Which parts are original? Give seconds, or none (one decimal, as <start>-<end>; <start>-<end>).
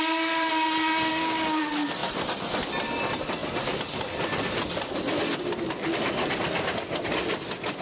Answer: 0.0-1.1; 1.6-7.8